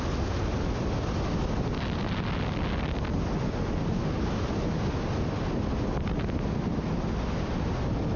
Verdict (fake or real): real